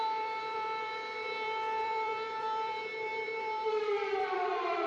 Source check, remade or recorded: remade